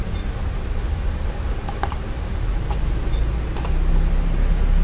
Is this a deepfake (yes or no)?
no